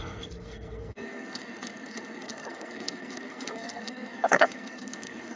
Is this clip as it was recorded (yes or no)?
no